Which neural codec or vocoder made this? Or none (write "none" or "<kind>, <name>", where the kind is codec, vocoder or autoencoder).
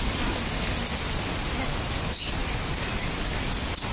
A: none